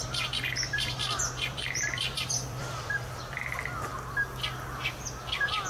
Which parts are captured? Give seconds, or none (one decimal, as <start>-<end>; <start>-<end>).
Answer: 0.0-0.7; 3.9-5.7